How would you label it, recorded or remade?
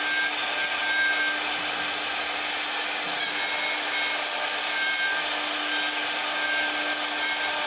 recorded